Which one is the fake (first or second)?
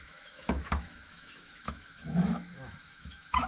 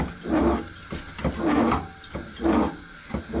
first